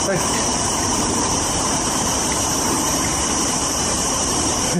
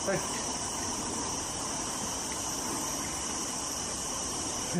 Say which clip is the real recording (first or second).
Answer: second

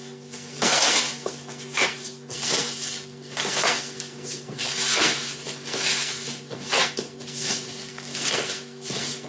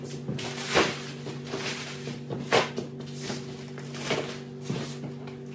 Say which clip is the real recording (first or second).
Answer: second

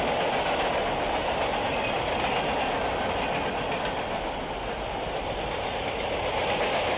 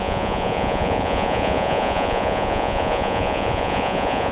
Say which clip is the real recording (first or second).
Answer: first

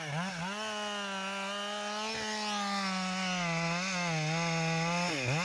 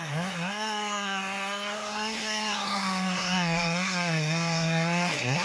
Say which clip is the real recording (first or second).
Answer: first